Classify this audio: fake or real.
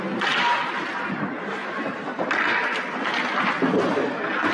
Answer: real